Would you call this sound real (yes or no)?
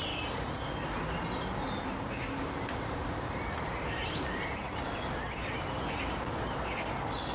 yes